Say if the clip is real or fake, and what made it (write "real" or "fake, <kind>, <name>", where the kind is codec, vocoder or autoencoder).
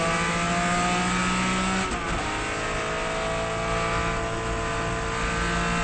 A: real